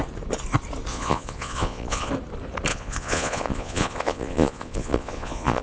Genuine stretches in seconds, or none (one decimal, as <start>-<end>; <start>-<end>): 0.0-0.9; 2.1-2.7